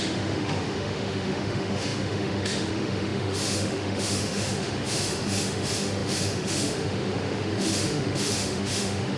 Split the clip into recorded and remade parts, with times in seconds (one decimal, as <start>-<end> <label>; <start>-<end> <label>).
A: 0.0-9.2 remade

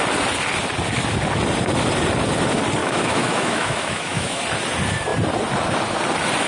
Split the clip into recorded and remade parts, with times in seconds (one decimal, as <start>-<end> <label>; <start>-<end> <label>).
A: 0.0-2.8 recorded; 2.8-4.4 remade; 4.4-6.5 recorded

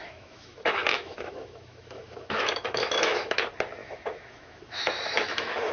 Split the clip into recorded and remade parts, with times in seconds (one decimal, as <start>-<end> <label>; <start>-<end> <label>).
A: 0.0-3.4 remade; 3.4-3.8 recorded; 3.8-5.7 remade

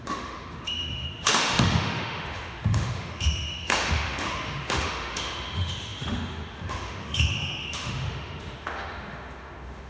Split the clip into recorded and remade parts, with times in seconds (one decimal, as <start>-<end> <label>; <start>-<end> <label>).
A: 0.0-9.9 remade

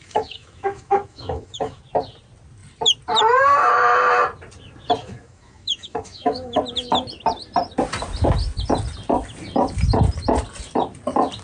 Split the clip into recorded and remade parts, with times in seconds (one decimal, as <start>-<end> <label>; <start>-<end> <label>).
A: 0.0-1.8 remade; 1.8-5.0 recorded; 5.0-6.6 remade; 6.6-11.4 recorded